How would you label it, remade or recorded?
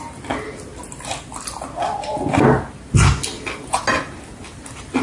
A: recorded